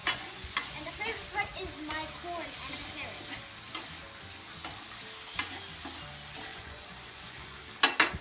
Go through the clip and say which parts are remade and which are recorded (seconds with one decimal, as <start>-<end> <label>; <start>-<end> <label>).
0.0-0.9 remade; 0.9-6.5 recorded; 6.5-7.6 remade; 7.6-8.2 recorded